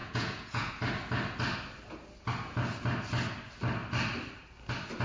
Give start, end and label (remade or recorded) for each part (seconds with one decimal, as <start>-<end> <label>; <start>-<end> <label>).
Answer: 0.0-0.7 remade; 0.7-5.0 recorded